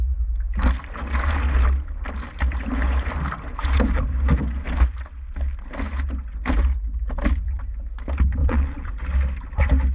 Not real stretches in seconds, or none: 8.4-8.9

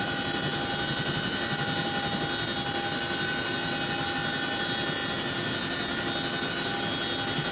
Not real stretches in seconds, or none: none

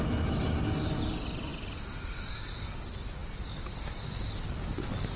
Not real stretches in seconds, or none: none

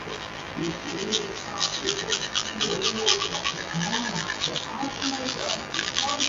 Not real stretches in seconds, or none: 0.0-6.3